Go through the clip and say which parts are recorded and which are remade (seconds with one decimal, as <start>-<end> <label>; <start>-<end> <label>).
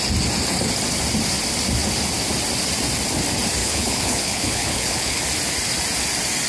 0.0-3.6 recorded; 3.6-5.2 remade; 5.2-6.5 recorded